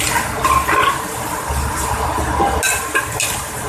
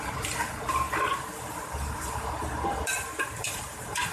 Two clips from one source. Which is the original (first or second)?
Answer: first